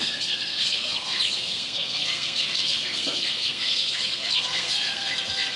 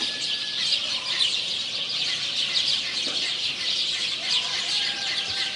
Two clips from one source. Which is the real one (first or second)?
second